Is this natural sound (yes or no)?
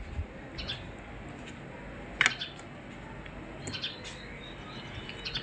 yes